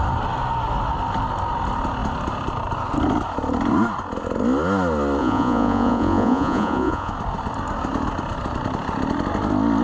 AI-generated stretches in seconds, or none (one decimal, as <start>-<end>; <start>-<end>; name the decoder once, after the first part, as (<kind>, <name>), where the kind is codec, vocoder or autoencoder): 5.2-7.1 (vocoder, Vocos)